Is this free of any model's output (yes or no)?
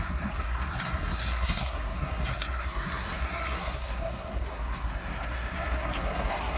no